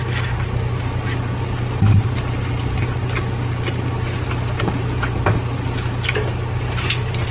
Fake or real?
real